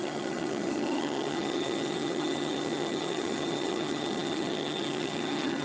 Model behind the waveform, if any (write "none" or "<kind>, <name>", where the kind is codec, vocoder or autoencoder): vocoder, HiFi-GAN